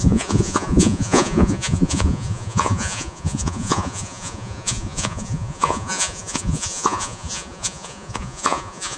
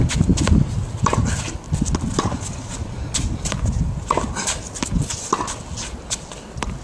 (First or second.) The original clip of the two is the second